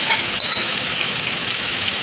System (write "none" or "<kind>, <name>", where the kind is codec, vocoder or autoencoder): autoencoder, DAC-VAE